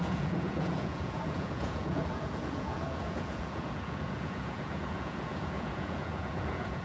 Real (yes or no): no